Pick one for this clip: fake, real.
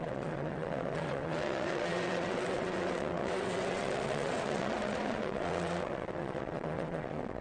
fake